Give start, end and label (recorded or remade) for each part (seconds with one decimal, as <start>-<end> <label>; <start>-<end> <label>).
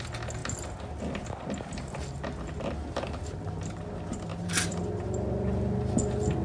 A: 0.0-4.3 recorded; 4.3-4.8 remade; 4.8-6.4 recorded